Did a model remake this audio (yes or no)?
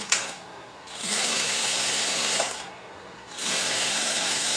yes